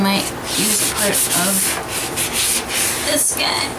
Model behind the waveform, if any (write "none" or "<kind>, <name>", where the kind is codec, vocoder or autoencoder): none